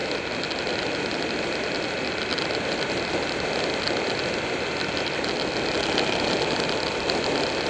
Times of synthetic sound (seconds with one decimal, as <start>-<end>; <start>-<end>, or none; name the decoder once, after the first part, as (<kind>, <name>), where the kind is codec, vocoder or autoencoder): none